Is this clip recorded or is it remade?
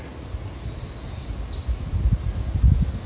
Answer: recorded